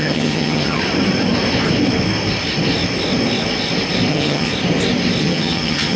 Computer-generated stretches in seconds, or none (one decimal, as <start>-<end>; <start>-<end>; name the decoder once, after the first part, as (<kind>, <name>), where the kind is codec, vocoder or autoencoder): 0.0-0.8 (vocoder, HiFi-GAN); 4.1-4.5; 5.2-6.0